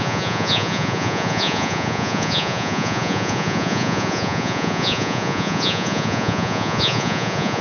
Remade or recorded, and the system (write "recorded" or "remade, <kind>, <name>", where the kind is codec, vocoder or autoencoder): remade, vocoder, Vocos